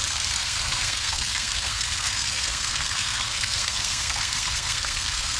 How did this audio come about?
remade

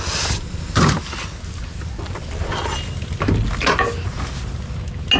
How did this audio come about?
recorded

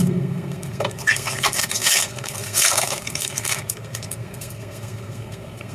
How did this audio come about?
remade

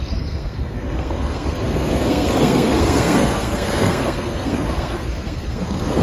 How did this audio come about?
remade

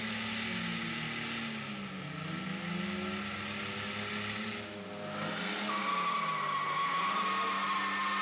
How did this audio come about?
recorded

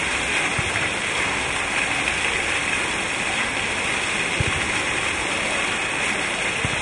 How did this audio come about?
recorded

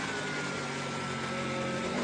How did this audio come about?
recorded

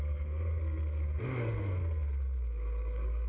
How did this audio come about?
remade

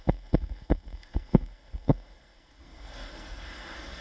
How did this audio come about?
remade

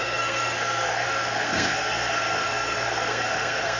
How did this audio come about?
remade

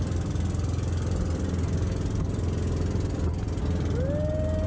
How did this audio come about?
recorded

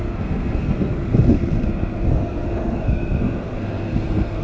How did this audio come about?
remade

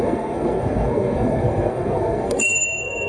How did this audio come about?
remade